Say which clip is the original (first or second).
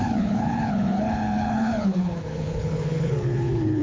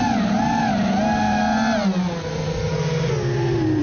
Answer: second